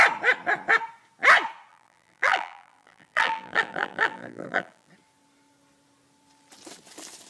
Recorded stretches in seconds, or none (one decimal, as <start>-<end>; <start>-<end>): 0.0-1.7; 4.9-7.3